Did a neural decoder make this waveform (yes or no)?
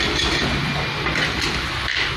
no